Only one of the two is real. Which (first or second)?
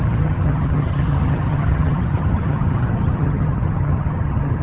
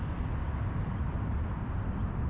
second